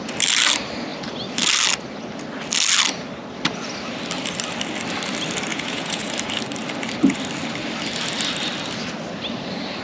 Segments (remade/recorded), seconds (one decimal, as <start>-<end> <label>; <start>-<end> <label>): 0.0-5.5 recorded; 5.5-6.1 remade; 6.1-9.8 recorded